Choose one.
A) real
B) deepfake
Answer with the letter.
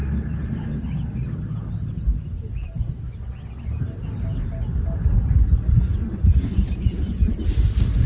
A